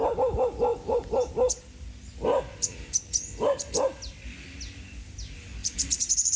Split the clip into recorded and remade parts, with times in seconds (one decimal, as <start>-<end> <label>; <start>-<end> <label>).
0.0-0.7 recorded; 0.7-1.3 remade; 1.3-2.6 recorded; 2.6-4.1 remade; 4.1-5.6 recorded; 5.6-6.4 remade